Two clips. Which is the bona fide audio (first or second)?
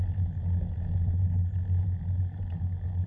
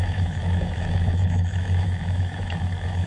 first